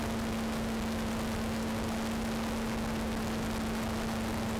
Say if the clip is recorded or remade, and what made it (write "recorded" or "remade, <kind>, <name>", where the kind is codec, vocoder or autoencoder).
recorded